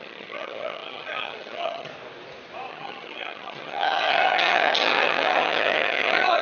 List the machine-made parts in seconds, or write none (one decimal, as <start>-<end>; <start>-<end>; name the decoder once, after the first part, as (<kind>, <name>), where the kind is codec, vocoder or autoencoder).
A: 0.0-1.9 (vocoder, HiFi-GAN); 2.7-6.4